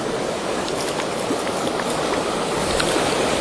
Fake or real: real